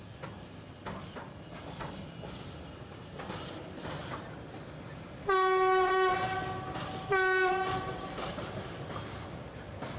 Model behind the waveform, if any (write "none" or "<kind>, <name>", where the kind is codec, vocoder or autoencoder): none